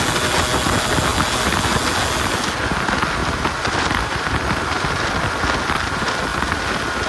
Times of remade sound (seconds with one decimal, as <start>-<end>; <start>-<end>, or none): 3.2-4.6